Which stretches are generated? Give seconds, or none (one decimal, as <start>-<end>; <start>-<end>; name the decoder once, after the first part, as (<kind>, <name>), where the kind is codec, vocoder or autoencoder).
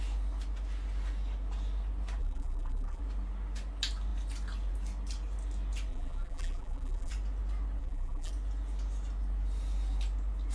2.2-3.0 (vocoder, BigVGAN v2); 5.9-7.1; 7.8-8.3